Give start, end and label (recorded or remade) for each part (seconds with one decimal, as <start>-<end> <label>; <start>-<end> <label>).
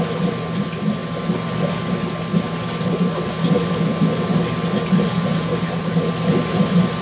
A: 0.0-5.3 recorded; 5.3-6.0 remade; 6.0-7.0 recorded